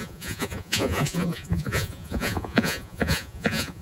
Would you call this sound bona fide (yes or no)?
no